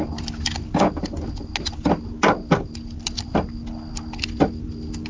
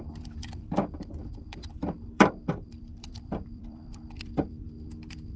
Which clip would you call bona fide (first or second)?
first